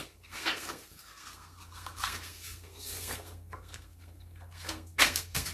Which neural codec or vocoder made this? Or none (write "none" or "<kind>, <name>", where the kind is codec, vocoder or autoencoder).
codec, SNAC